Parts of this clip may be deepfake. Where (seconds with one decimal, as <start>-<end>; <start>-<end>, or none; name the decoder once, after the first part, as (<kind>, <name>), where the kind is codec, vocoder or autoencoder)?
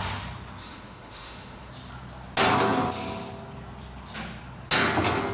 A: 0.6-1.7 (autoencoder, DAC-VAE)